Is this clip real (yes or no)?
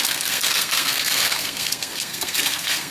no